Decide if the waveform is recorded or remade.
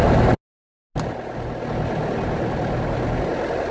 recorded